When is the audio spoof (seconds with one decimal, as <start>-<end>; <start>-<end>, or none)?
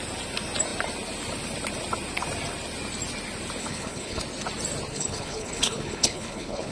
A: 3.6-4.2; 4.9-6.7